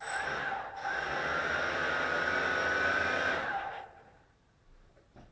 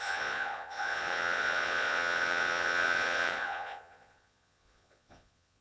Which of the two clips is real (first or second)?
first